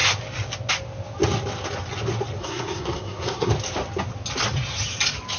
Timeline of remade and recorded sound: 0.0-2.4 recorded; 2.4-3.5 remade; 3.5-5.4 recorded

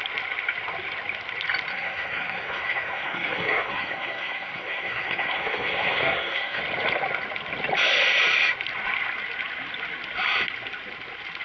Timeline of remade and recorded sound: 0.0-1.7 recorded; 1.7-6.6 remade; 6.6-11.4 recorded